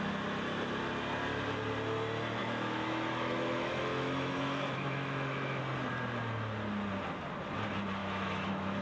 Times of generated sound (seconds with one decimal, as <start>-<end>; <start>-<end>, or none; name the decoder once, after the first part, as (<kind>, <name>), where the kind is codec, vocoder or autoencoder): 2.4-5.6 (autoencoder, DAC-VAE); 8.0-8.8